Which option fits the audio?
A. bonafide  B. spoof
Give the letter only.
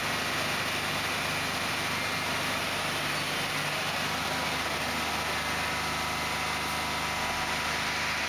A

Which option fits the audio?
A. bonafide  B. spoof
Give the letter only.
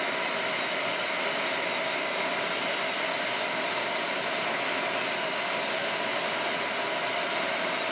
A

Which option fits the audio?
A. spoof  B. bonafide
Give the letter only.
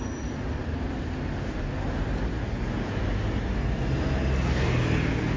B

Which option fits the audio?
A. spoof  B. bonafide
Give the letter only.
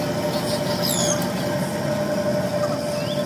B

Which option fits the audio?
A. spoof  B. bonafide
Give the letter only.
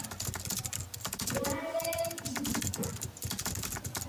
B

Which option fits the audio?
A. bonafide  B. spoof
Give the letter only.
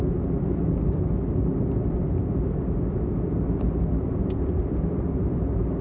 A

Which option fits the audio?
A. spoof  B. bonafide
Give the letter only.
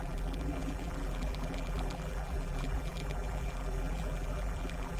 A